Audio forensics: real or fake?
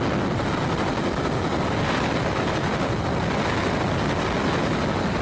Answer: real